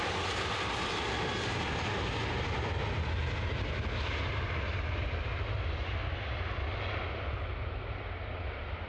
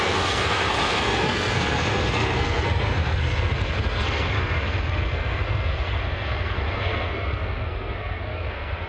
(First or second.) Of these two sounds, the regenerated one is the second